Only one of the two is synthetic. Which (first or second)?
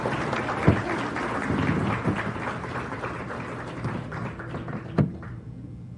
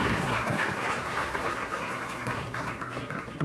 second